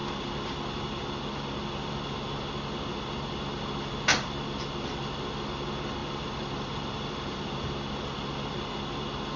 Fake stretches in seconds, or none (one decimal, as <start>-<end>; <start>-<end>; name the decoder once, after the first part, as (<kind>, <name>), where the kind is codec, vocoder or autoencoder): 6.0-7.4 (vocoder, BigVGAN v2)